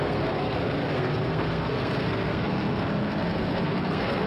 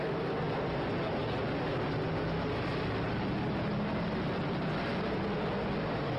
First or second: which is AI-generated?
first